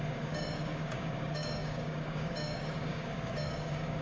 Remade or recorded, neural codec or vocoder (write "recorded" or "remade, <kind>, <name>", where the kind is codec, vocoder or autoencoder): remade, codec, DAC